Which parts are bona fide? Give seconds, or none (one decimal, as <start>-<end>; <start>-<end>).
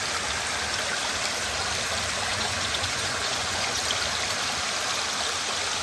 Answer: 0.0-2.3; 3.8-5.8